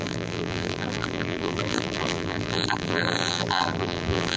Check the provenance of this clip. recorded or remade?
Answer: remade